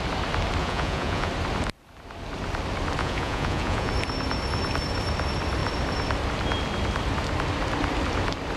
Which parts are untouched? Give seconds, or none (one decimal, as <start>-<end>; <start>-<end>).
0.0-0.6; 1.3-3.0; 3.9-8.6